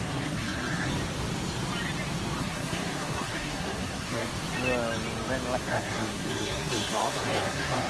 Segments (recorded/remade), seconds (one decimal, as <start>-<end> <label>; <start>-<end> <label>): 0.0-0.9 remade; 0.9-2.4 recorded; 2.4-4.3 remade; 4.3-5.6 recorded; 5.6-7.9 remade